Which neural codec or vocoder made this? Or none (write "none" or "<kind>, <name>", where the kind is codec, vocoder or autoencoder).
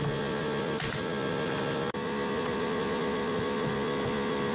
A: none